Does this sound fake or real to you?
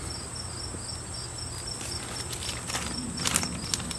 real